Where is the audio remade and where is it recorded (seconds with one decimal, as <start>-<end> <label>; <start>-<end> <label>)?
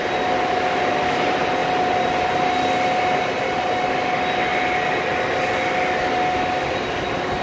0.0-7.4 recorded